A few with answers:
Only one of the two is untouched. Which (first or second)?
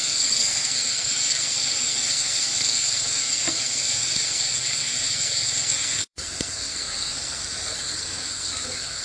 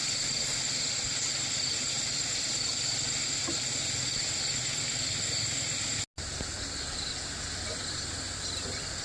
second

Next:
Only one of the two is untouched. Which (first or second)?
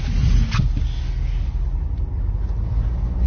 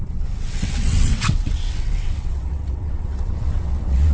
first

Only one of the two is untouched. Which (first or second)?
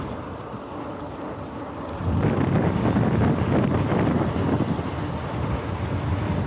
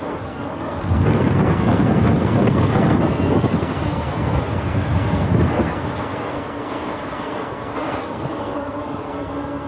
first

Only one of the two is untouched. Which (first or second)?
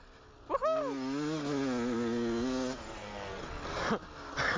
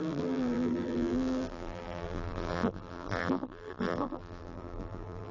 first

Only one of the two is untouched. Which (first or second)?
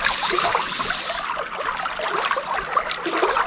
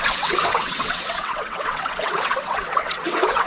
first